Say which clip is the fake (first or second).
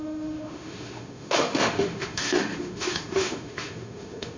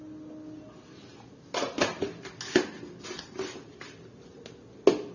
first